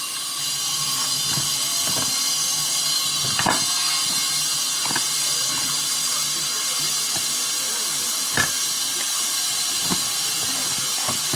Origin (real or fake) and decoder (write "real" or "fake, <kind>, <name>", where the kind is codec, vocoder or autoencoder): real